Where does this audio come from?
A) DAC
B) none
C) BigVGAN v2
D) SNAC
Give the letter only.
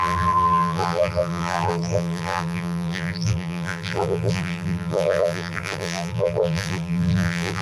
C